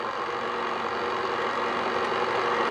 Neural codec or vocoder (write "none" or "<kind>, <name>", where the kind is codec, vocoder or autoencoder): none